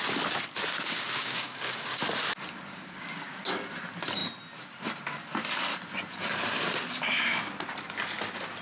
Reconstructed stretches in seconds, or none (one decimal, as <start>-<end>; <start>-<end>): 0.7-2.0; 2.7-3.5